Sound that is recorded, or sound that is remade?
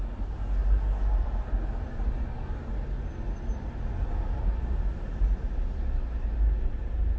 recorded